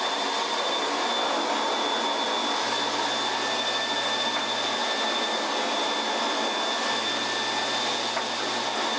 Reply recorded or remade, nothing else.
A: recorded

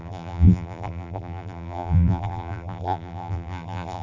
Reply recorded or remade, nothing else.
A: remade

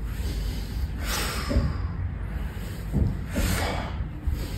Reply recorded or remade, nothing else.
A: recorded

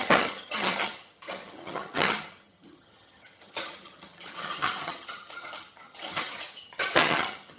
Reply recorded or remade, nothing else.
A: remade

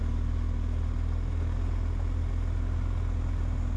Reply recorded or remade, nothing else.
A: recorded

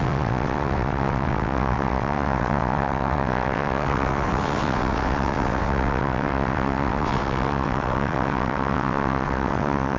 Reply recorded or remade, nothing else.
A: remade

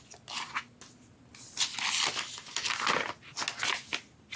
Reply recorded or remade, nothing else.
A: recorded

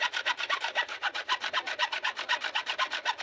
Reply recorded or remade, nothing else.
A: recorded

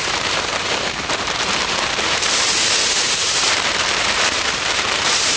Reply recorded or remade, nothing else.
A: remade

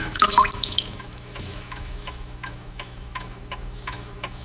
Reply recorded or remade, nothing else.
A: remade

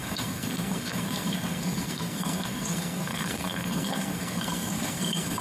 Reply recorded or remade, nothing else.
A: remade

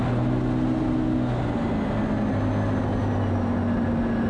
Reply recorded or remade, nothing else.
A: recorded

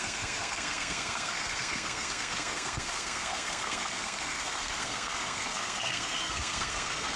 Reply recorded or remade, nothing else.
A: remade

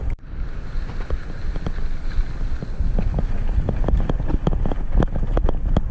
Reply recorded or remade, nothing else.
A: recorded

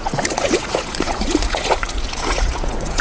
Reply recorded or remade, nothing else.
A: remade